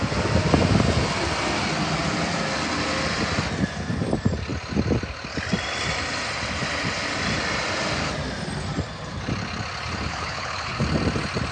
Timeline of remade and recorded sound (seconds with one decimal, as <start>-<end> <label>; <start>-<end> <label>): 0.0-10.1 recorded; 10.1-10.8 remade; 10.8-11.5 recorded